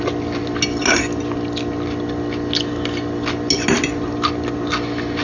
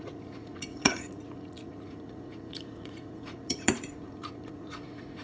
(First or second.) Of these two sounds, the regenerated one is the second